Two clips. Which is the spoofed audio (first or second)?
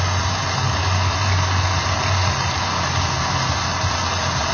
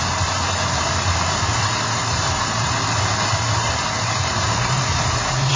second